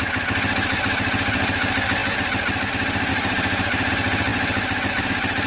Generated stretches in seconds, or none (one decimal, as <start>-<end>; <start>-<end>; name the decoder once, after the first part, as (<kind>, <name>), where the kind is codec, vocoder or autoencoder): 3.1-3.9 (vocoder, BigVGAN v2)